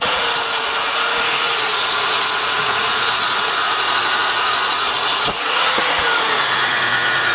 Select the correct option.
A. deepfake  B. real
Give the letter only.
A